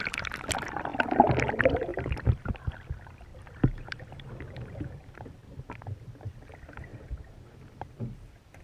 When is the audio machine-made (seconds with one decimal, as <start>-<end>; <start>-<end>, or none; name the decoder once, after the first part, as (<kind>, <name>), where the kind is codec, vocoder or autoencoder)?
1.9-2.5 (vocoder, BigVGAN v2); 3.3-5.7; 6.9-7.5